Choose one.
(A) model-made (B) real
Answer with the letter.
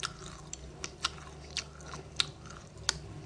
B